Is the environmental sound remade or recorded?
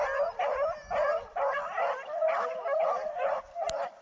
remade